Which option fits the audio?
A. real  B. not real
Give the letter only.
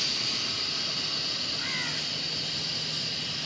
A